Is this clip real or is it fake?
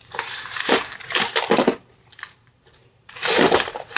fake